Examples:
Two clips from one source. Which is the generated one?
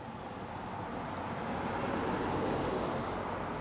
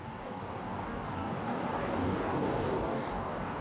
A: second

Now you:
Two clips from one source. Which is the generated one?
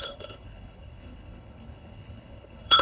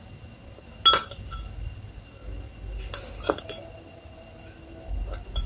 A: first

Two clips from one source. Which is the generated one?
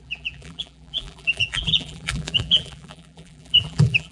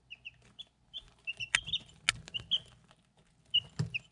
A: first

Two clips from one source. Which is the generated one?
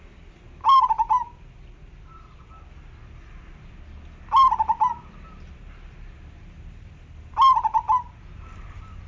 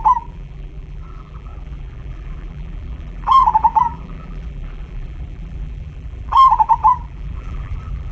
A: second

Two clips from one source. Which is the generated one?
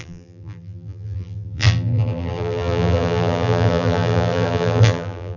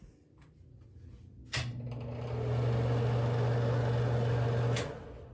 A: first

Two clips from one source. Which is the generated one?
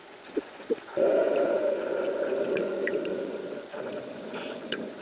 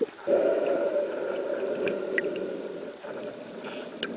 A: first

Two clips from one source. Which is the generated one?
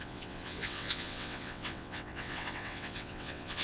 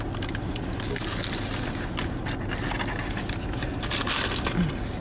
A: first